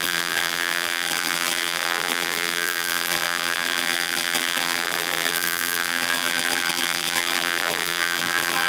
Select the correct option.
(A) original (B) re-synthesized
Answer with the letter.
B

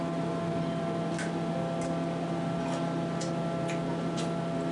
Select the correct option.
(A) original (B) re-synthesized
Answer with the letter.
A